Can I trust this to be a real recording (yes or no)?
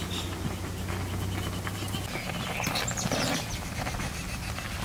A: yes